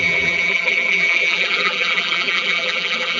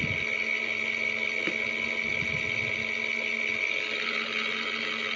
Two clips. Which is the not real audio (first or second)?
first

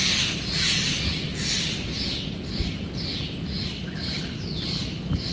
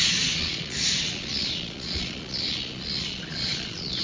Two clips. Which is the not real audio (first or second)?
second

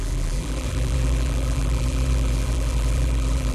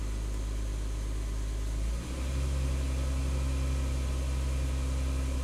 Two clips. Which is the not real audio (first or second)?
first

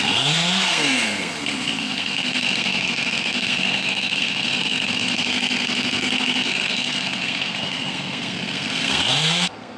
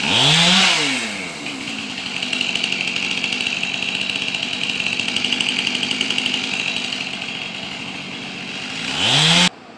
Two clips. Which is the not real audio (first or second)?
first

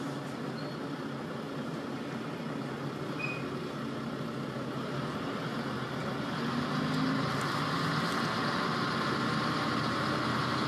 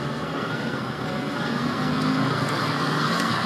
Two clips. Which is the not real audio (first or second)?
second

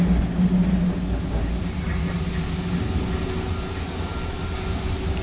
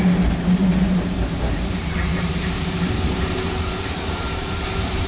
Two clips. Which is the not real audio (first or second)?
second